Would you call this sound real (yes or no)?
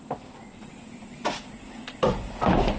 yes